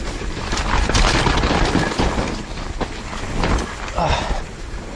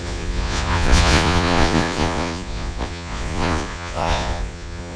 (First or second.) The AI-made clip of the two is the second